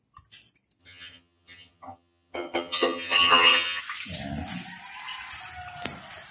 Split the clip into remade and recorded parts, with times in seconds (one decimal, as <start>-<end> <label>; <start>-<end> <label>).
0.0-0.8 recorded; 0.8-3.8 remade; 3.8-6.3 recorded